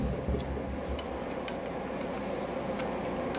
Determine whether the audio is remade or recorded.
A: recorded